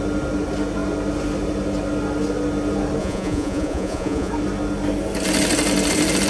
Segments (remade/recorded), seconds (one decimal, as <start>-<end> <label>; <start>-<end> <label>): 0.0-3.0 recorded; 3.0-4.3 remade; 4.3-6.3 recorded